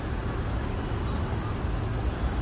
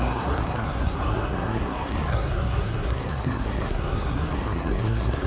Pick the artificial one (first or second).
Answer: second